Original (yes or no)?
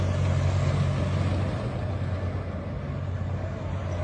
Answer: yes